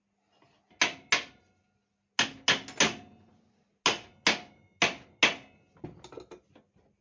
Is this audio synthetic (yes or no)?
no